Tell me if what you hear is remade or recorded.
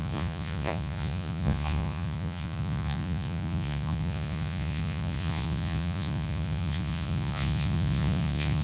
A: remade